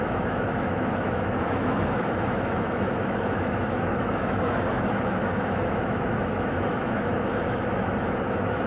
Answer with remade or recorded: remade